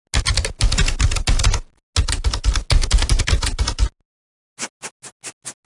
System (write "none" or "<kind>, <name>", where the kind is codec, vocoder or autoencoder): none